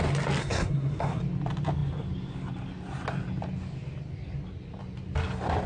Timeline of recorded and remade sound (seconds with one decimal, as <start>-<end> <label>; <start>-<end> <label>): 0.0-0.4 recorded; 0.4-1.2 remade; 1.2-5.7 recorded